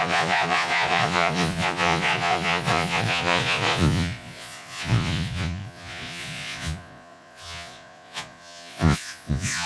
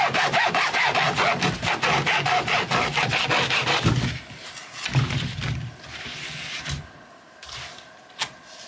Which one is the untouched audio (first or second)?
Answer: second